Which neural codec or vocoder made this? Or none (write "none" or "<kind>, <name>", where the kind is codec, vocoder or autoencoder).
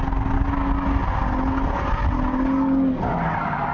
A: none